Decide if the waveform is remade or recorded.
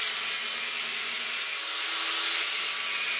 recorded